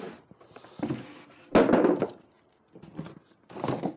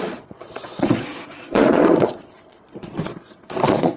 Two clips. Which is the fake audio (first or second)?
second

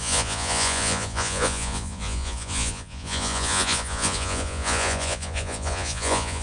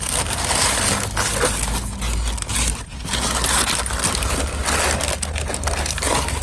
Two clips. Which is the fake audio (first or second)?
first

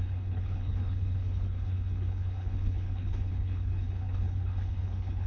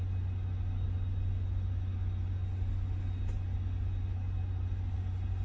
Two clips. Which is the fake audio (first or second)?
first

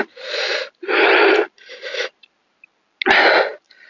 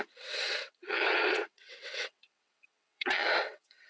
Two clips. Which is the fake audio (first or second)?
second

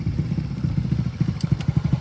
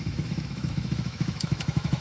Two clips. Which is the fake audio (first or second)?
second